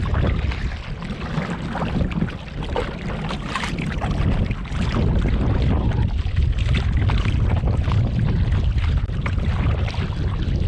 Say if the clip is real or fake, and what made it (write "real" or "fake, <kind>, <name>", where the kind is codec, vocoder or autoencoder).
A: real